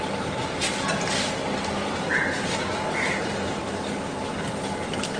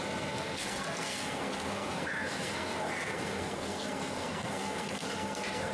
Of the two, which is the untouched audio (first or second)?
first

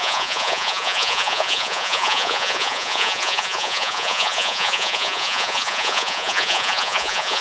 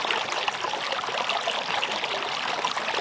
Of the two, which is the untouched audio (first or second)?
second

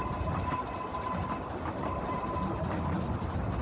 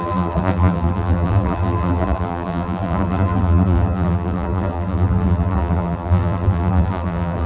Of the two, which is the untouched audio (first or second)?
first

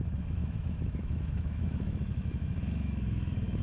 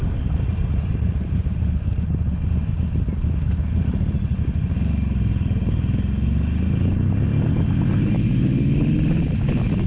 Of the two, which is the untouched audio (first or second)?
second